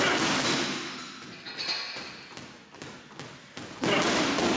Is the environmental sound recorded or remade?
recorded